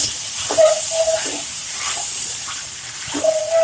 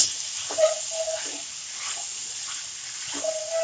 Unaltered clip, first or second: second